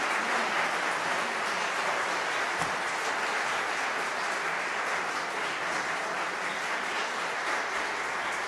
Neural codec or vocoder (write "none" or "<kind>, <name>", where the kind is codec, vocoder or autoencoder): none